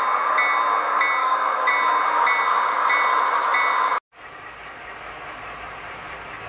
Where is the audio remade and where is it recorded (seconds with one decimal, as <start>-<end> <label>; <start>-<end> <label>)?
0.0-1.2 recorded; 1.2-1.7 remade; 1.7-6.5 recorded